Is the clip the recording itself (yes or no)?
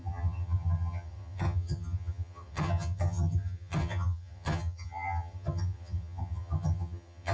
no